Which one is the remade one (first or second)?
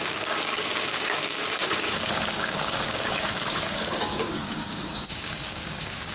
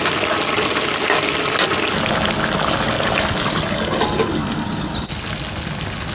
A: first